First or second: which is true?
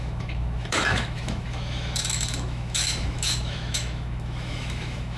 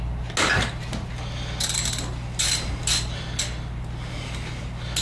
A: second